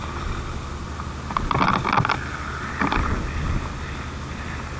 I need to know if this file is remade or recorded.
recorded